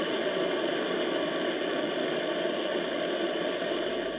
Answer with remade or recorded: recorded